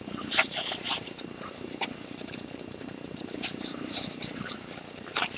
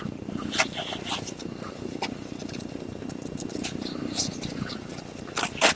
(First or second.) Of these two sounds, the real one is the second